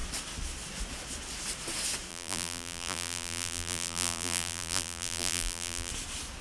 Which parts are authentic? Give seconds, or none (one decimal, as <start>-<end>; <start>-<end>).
0.0-2.1; 5.9-6.4